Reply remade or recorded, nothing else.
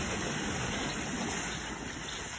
recorded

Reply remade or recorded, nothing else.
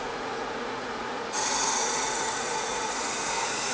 remade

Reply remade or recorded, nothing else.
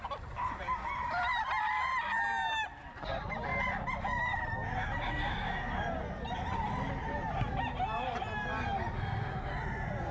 recorded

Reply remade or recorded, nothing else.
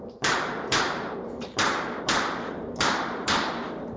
remade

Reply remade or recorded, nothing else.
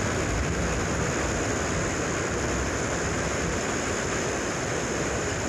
recorded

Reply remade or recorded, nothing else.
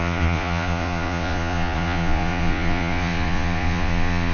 remade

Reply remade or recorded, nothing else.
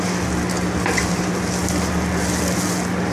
recorded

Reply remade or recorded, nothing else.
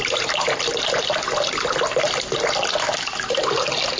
recorded